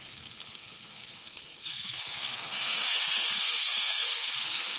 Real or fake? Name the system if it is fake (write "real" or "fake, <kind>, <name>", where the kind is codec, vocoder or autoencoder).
fake, codec, SNAC